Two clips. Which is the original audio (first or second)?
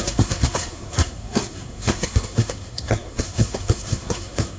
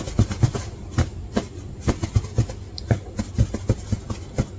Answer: second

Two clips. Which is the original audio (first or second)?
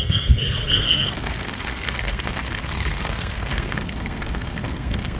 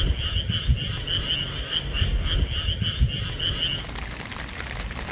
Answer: second